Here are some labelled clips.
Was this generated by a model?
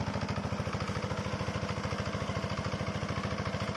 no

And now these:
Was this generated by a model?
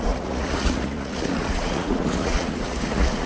yes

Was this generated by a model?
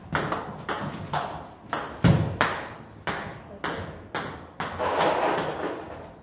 no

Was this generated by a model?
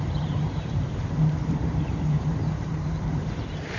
yes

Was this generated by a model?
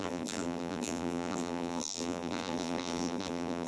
yes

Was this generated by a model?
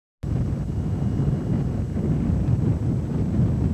no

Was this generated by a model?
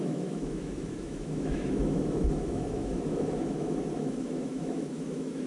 yes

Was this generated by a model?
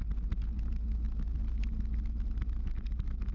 no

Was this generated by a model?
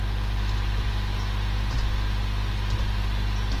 no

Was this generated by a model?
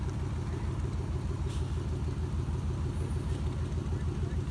no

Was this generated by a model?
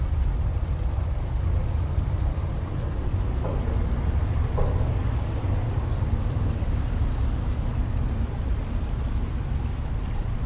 no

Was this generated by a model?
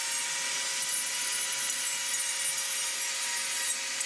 no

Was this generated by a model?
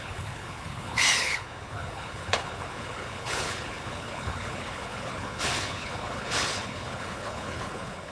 yes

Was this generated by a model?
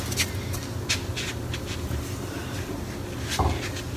no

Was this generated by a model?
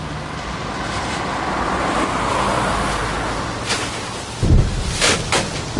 no